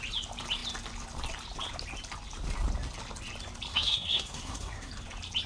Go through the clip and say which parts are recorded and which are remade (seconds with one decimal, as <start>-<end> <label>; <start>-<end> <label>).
0.0-3.7 recorded; 3.7-4.9 remade; 4.9-5.5 recorded